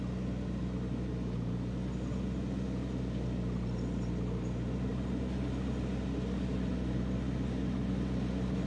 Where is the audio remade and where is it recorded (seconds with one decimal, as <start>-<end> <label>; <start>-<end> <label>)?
0.0-8.7 recorded